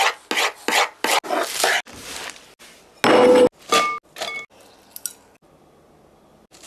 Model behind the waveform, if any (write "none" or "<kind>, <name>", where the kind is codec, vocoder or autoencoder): none